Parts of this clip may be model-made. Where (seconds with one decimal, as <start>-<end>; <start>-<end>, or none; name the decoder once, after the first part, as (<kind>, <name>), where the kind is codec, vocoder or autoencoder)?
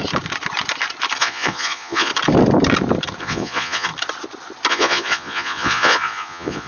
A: 1.2-2.1 (vocoder, Vocos); 3.2-3.9; 4.7-6.7